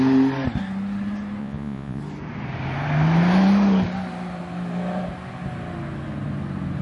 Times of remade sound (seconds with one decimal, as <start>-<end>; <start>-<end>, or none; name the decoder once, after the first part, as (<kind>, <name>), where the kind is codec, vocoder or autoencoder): 1.4-2.0 (vocoder, Vocos)